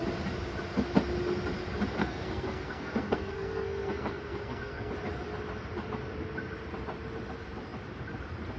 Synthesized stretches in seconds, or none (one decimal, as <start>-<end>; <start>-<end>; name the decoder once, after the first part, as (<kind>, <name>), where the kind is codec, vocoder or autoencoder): 2.0-4.9 (codec, SNAC)